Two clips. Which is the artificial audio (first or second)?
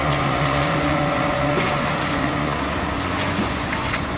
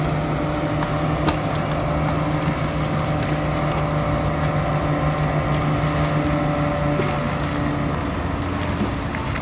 first